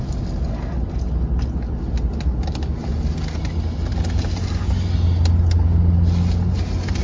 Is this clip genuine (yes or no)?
yes